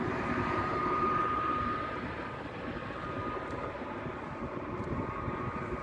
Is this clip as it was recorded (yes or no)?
no